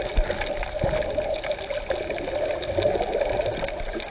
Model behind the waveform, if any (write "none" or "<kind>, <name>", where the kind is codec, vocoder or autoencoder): none